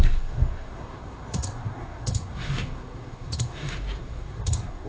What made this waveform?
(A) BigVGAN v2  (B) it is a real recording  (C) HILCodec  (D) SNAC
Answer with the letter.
D